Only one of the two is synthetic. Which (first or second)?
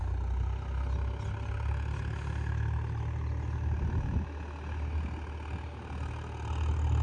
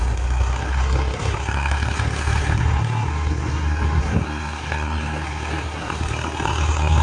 second